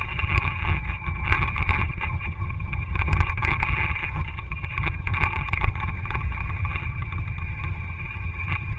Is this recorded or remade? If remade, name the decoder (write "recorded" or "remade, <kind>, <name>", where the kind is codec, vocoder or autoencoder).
remade, vocoder, HiFi-GAN